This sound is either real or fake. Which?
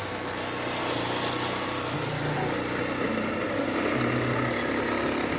real